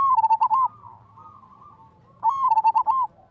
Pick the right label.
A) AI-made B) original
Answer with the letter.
B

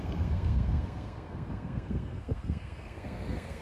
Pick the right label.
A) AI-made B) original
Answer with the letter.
A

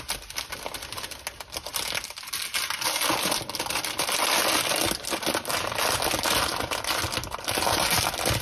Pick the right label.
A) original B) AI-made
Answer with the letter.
A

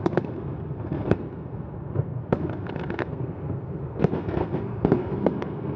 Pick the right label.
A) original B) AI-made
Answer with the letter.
B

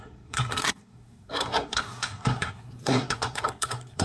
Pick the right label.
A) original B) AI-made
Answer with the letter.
B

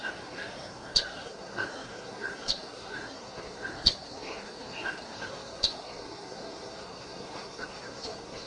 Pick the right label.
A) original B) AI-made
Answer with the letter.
B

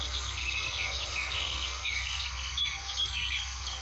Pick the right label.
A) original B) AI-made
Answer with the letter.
B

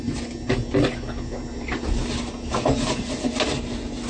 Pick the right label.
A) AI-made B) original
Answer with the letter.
B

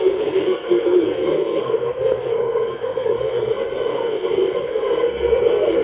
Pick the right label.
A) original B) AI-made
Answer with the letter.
B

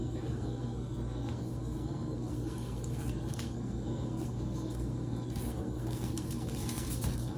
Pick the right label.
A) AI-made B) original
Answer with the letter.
A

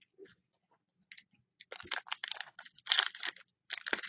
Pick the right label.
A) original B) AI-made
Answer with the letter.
A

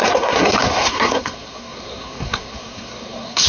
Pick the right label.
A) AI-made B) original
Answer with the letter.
A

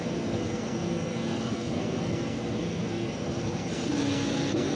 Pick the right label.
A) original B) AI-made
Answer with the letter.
B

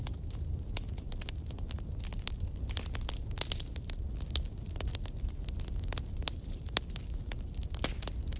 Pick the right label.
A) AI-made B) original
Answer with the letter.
B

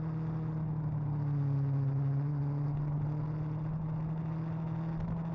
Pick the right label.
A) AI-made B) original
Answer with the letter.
B